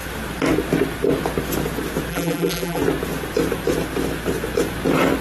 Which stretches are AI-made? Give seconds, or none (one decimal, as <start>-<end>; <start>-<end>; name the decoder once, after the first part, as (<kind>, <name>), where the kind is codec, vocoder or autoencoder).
2.1-2.8 (vocoder, BigVGAN v2)